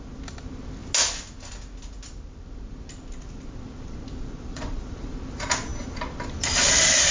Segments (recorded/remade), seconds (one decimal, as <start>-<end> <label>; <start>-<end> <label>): 0.0-4.5 recorded; 4.5-5.1 remade; 5.1-7.1 recorded